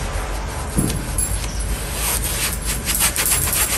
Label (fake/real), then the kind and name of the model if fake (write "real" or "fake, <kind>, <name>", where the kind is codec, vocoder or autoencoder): real